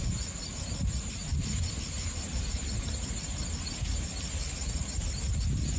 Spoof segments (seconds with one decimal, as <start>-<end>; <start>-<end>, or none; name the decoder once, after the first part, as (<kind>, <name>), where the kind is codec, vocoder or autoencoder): none

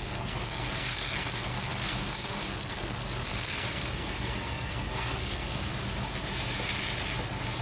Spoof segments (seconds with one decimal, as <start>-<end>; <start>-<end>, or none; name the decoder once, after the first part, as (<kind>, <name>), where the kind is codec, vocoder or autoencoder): 0.0-5.7 (codec, SNAC)

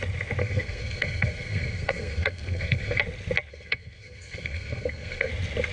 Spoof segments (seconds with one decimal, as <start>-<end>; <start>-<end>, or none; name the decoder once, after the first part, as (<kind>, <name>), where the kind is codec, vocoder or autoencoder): 0.4-3.0 (codec, SNAC); 3.5-5.3

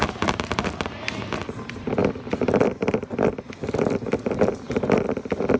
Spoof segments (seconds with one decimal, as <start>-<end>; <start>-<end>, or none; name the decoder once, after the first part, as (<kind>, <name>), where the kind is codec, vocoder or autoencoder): none

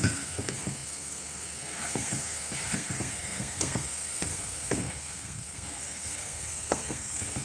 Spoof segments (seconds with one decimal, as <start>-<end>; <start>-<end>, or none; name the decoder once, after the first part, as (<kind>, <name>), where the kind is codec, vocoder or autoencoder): 0.0-7.4 (codec, SNAC)